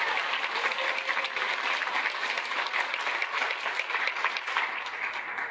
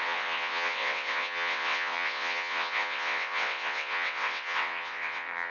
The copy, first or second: second